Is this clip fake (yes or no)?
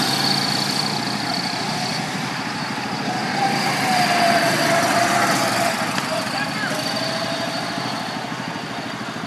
no